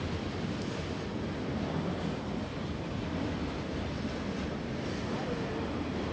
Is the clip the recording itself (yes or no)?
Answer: yes